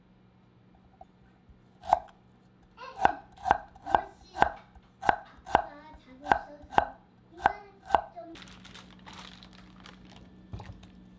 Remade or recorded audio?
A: recorded